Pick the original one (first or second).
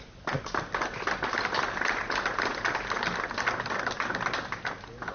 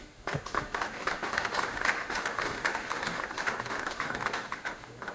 first